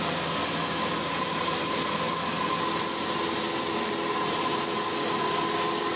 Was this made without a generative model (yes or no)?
yes